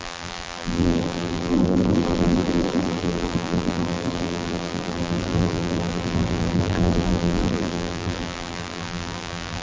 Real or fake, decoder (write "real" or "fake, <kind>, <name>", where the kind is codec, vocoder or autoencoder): fake, vocoder, BigVGAN v2